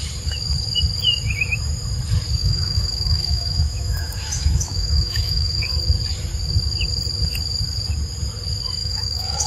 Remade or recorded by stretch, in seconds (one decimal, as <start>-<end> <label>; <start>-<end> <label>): 0.0-2.4 recorded; 2.4-5.6 remade; 5.6-8.8 recorded; 8.8-9.5 remade